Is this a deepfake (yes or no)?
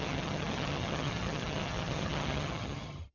yes